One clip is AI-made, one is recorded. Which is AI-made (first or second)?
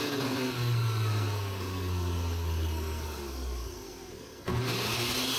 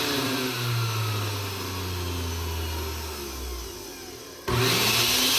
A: first